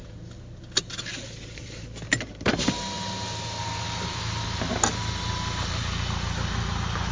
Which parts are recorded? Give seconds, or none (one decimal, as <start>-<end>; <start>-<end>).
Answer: 0.0-7.1